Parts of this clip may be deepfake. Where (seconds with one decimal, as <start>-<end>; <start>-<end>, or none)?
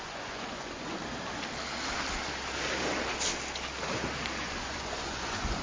0.0-1.0; 4.4-5.6